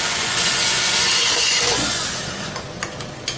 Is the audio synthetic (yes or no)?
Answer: yes